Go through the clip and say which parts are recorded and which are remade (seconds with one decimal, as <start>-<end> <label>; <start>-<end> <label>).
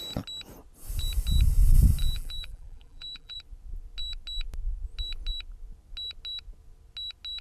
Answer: 0.0-2.0 recorded; 2.0-3.4 remade; 3.4-7.4 recorded